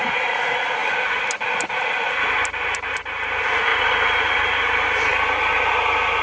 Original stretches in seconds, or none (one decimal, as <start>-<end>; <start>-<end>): 0.0-0.8; 2.9-3.7; 4.4-6.2